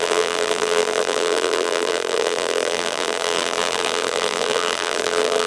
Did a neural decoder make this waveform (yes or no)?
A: yes